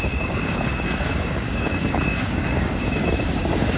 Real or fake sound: fake